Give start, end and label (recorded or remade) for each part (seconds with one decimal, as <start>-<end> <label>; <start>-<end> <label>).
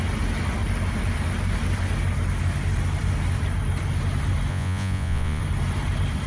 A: 0.0-4.5 recorded; 4.5-5.4 remade; 5.4-6.3 recorded